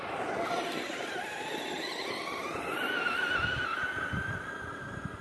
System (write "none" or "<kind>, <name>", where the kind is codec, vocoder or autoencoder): none